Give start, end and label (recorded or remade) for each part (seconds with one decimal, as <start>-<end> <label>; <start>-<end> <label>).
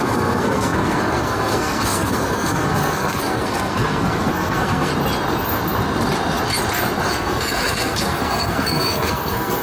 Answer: 0.0-4.9 remade; 4.9-7.1 recorded; 7.1-9.6 remade